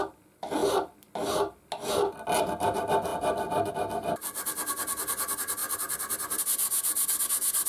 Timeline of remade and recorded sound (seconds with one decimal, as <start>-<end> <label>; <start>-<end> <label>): 0.0-7.7 recorded